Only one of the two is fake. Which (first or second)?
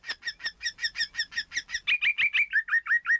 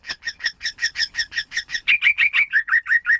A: second